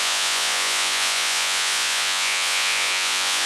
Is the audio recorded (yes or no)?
no